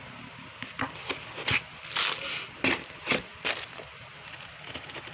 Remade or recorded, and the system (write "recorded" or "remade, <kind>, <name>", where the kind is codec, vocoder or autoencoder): recorded